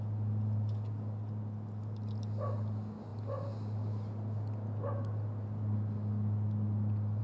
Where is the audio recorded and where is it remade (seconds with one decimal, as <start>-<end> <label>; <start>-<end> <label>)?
0.0-7.2 recorded